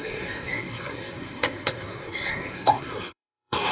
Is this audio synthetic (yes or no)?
yes